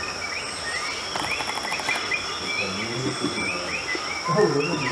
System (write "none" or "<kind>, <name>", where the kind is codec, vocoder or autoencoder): none